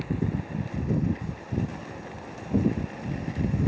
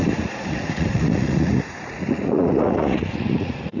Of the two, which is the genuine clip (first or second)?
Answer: first